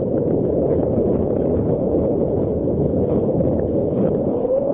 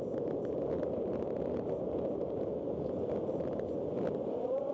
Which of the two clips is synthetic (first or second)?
first